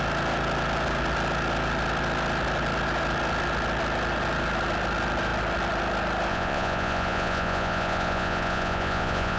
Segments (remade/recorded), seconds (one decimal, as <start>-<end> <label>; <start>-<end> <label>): 0.0-6.3 recorded; 6.3-9.4 remade